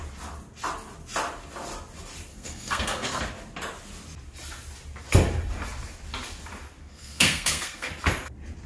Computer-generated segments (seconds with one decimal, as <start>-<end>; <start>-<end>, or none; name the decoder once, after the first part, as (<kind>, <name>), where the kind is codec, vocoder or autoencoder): 2.3-3.2 (codec, SNAC); 6.8-7.9